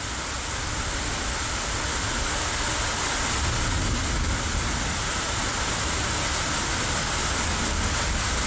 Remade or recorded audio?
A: recorded